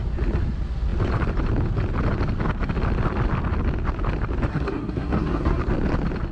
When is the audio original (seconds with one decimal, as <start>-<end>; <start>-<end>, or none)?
0.0-4.5; 5.6-6.3